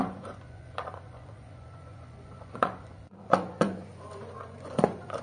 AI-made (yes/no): yes